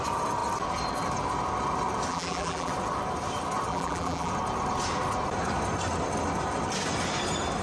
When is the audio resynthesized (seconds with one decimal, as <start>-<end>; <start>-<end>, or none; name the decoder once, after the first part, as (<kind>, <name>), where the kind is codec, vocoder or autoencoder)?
2.1-2.7 (vocoder, BigVGAN v2); 3.7-4.3